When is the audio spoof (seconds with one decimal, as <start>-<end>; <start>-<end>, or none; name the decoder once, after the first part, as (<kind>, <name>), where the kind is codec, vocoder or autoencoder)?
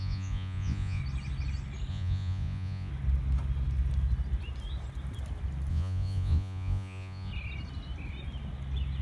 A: 0.0-1.0 (vocoder, Vocos); 1.9-2.9; 5.7-7.3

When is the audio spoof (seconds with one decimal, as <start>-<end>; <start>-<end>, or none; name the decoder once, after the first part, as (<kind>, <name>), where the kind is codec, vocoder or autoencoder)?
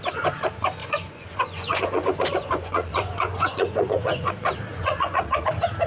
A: 0.8-4.3 (vocoder, Vocos); 4.7-5.5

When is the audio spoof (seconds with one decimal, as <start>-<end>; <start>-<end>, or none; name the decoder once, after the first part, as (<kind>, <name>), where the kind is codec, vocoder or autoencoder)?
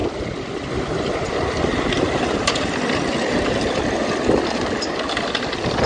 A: none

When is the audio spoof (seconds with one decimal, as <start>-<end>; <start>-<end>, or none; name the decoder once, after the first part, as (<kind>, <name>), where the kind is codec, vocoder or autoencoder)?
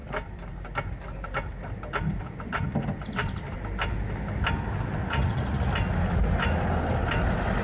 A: 5.0-5.7 (vocoder, Vocos)